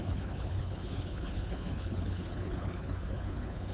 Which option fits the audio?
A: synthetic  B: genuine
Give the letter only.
A